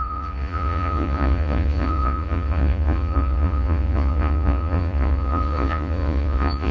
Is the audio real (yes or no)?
no